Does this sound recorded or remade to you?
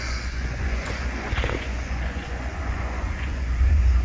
remade